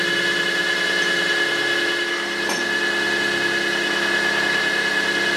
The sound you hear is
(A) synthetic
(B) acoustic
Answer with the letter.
B